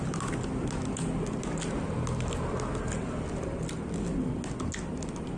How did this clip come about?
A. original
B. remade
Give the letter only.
A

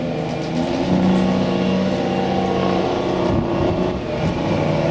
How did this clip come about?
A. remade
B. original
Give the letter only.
B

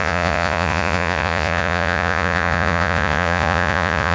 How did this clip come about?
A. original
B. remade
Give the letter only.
B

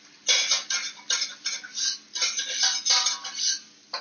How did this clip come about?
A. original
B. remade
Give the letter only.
A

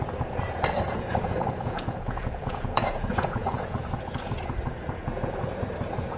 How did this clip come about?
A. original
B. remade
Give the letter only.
B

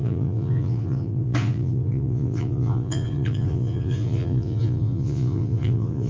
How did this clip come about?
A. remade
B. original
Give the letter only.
A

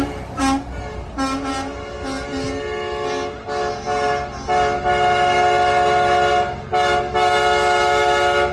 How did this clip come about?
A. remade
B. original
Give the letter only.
B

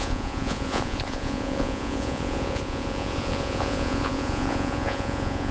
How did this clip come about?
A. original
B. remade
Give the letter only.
B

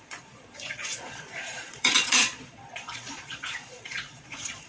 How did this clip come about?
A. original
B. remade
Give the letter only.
B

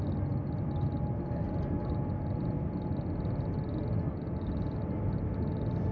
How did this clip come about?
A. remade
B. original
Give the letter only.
B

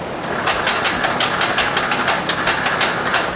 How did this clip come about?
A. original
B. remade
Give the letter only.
A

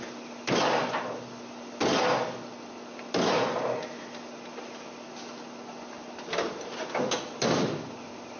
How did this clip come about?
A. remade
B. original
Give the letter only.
B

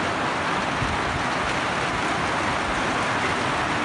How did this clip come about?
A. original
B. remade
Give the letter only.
A